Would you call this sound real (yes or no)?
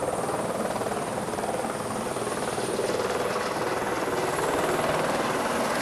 yes